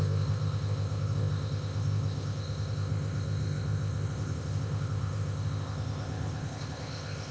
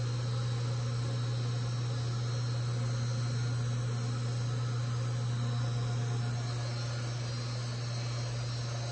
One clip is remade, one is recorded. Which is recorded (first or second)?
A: second